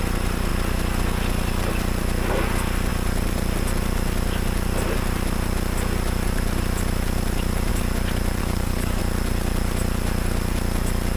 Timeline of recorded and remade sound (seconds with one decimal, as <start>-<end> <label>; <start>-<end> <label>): 0.0-8.4 recorded; 8.4-9.0 remade; 9.0-11.2 recorded